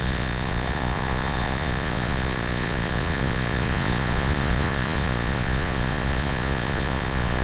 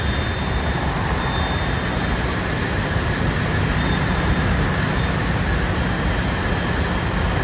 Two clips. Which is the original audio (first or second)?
second